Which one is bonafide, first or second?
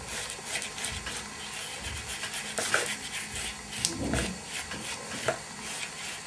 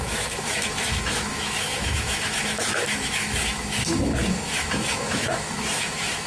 first